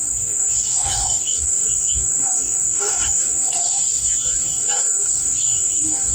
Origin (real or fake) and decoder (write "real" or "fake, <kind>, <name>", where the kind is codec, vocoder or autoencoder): fake, codec, DAC